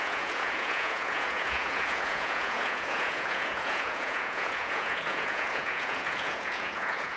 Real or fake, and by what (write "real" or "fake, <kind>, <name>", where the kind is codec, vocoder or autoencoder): fake, vocoder, Vocos